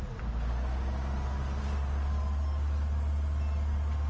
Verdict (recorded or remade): recorded